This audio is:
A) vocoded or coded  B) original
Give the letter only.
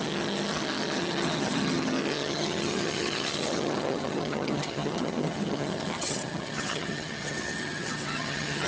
A